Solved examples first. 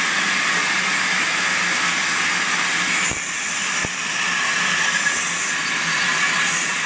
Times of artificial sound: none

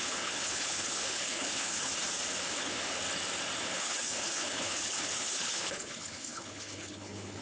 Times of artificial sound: 0.0-1.9 (codec, HILCodec); 2.4-3.0; 3.6-7.4

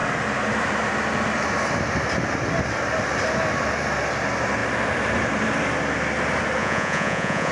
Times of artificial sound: 6.6-7.5 (vocoder, Vocos)

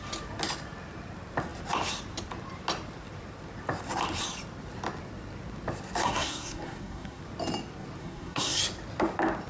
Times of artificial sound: 6.0-7.2 (codec, SNAC); 8.0-8.6

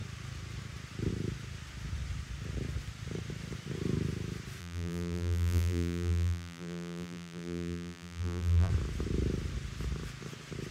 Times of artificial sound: 4.6-8.7 (vocoder, BigVGAN v2)

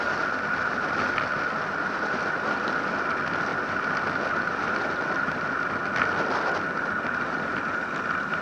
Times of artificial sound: none

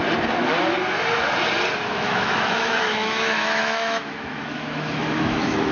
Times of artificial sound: 1.8-5.7 (autoencoder, DAC-VAE)

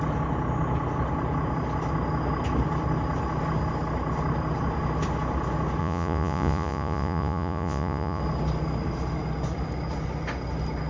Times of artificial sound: 5.8-8.2 (vocoder, Vocos)